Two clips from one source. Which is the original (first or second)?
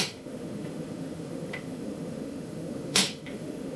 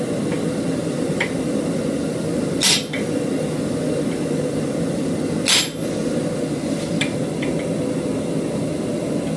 second